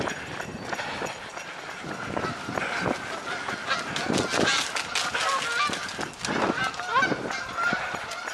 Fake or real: real